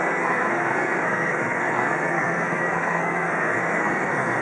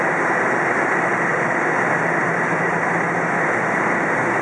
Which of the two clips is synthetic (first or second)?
first